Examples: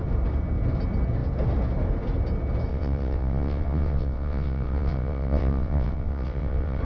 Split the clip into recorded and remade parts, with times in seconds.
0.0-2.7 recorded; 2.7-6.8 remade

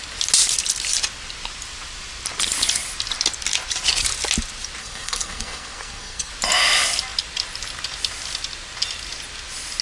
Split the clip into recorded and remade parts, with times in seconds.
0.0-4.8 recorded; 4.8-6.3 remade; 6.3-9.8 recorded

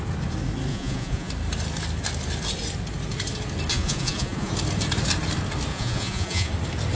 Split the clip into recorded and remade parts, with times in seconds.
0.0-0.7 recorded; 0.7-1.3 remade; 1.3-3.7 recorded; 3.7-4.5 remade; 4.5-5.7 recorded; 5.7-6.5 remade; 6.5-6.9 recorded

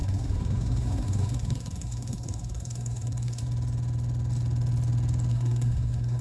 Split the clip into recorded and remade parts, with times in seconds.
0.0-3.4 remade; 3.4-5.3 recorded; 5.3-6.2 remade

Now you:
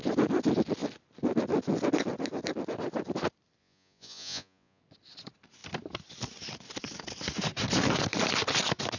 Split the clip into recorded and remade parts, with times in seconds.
0.0-3.6 recorded; 3.6-4.8 remade; 4.8-9.0 recorded